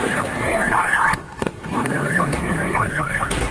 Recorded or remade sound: remade